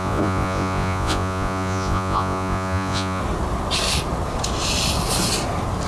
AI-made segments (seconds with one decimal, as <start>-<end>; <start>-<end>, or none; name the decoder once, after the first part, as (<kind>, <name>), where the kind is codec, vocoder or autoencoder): 0.0-3.2 (vocoder, Vocos)